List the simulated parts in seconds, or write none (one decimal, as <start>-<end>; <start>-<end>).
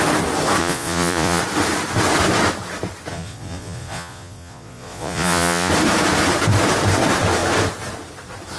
0.6-1.4; 3.1-5.7